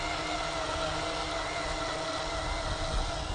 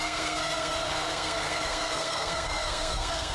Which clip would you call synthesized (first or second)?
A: second